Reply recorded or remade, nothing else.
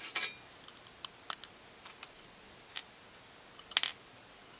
recorded